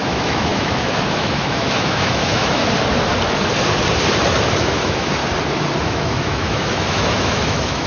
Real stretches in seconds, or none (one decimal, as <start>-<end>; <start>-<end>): 2.6-4.6; 5.2-5.8